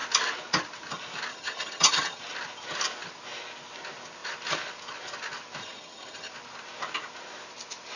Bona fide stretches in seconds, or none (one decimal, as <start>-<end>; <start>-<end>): 0.0-1.3; 2.2-5.6; 6.3-8.0